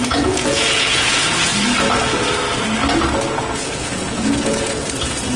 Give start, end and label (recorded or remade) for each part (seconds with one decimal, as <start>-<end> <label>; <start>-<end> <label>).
0.0-1.5 remade; 1.5-3.4 recorded; 3.4-5.4 remade

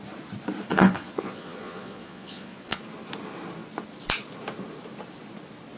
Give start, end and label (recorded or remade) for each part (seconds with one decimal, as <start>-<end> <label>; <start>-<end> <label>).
0.0-0.7 recorded; 0.7-2.8 remade; 2.8-5.8 recorded

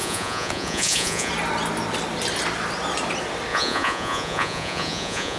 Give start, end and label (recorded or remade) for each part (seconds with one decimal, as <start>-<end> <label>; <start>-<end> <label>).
0.0-1.3 remade; 1.3-3.5 recorded; 3.5-5.4 remade

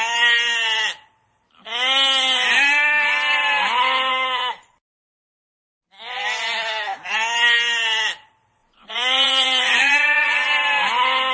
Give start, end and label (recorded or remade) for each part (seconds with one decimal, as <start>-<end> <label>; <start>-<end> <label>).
0.0-4.1 recorded; 4.1-5.0 remade; 5.0-8.6 recorded; 8.6-10.5 remade; 10.5-11.3 recorded

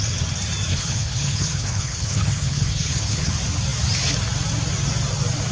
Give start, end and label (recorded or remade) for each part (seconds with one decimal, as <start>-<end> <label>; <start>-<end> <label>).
0.0-0.7 recorded; 0.7-3.3 remade; 3.3-5.5 recorded

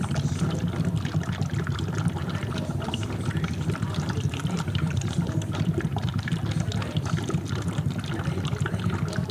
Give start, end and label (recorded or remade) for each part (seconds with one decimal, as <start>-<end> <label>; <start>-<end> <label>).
0.0-2.2 recorded; 2.2-6.3 remade; 6.3-9.3 recorded